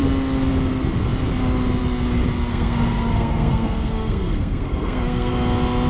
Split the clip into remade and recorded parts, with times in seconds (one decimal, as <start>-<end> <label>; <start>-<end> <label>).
0.0-2.5 recorded; 2.5-5.3 remade; 5.3-5.9 recorded